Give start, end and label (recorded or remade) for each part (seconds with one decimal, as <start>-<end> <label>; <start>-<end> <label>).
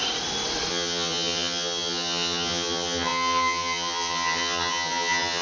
0.0-0.7 recorded; 0.7-5.4 remade